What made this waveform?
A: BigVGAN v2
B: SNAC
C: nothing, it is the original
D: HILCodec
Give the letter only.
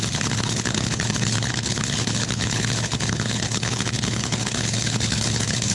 D